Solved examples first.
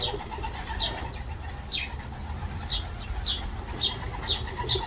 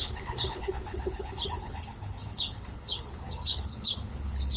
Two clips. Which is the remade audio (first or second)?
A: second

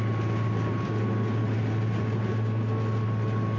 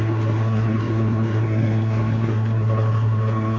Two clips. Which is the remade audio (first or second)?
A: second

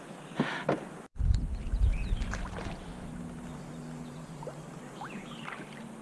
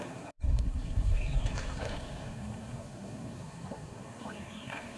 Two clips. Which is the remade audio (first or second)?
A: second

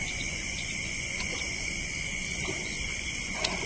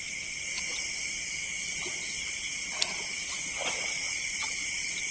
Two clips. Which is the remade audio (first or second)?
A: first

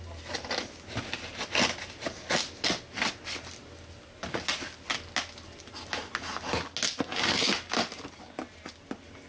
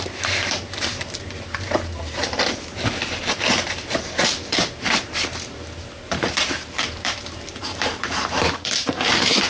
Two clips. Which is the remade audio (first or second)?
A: second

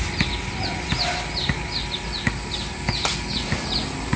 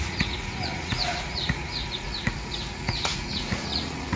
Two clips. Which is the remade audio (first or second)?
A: second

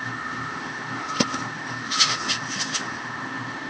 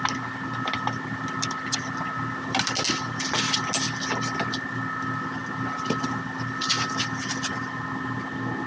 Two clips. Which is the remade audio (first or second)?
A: first